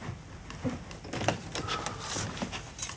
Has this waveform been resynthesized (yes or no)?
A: no